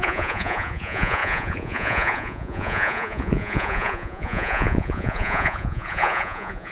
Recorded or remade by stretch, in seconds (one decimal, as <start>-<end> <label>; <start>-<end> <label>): 0.0-6.7 remade